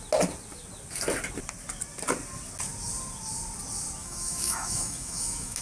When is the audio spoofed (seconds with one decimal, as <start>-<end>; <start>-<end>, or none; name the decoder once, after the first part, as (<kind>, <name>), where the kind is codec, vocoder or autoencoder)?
4.0-5.6 (autoencoder, DAC-VAE)